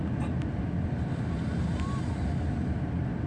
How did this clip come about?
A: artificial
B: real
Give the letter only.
B